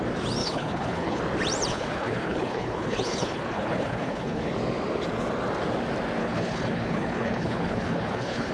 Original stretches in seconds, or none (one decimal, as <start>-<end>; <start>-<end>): 0.0-0.4; 1.2-1.7; 4.5-6.2